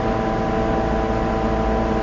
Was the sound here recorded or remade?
recorded